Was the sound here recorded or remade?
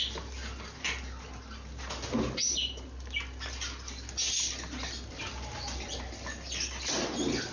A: recorded